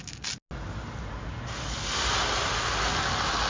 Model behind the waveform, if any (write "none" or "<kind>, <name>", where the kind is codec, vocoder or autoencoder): none